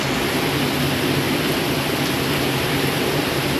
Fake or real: real